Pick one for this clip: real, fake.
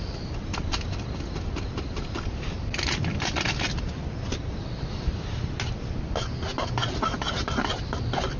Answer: real